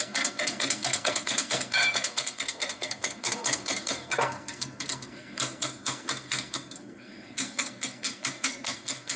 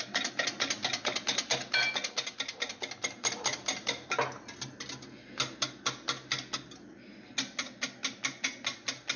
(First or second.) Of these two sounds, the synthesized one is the first